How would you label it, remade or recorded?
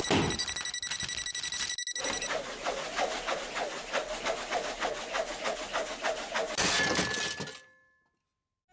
recorded